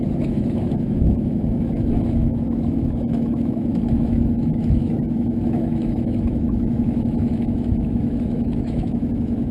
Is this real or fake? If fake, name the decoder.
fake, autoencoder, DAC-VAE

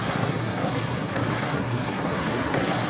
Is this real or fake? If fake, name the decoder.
fake, codec, SNAC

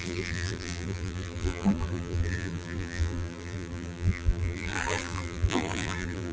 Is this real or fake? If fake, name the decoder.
fake, vocoder, BigVGAN v2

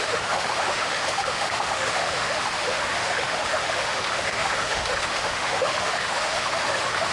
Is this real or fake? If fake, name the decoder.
fake, autoencoder, DAC-VAE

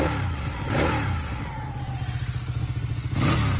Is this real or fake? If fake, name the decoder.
real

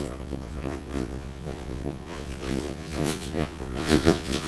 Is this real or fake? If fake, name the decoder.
fake, vocoder, Vocos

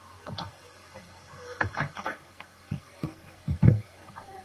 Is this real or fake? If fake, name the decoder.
fake, codec, SNAC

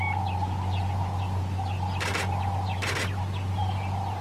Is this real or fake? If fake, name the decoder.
real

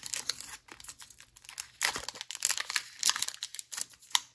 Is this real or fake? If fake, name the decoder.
real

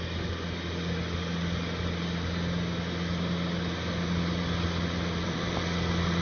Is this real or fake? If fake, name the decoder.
real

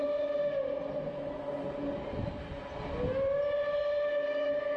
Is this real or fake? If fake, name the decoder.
real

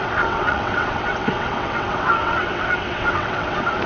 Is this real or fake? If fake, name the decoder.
fake, vocoder, WaveNeXt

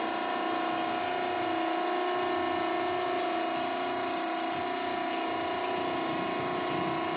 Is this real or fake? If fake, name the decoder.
real